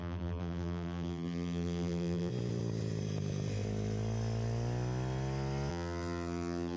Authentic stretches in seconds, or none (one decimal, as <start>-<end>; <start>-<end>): 2.3-5.7